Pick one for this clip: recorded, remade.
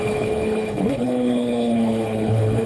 remade